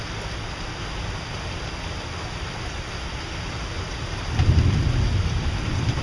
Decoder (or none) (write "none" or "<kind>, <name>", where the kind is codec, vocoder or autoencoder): none